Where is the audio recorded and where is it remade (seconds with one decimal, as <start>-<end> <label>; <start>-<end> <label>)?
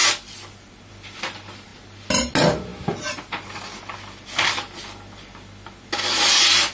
0.0-6.7 recorded